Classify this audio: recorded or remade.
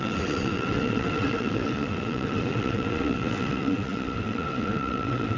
remade